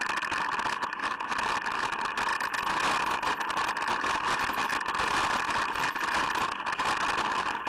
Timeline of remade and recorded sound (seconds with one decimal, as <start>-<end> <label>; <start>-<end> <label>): 0.0-7.7 recorded